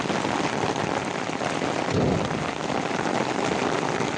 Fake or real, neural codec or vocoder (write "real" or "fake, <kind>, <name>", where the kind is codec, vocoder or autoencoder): real